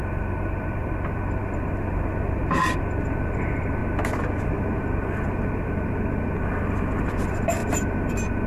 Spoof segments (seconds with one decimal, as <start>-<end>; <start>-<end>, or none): 0.0-1.4; 2.5-3.8; 4.4-7.6; 8.1-8.5